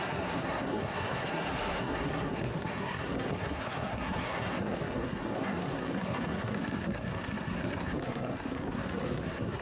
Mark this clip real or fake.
fake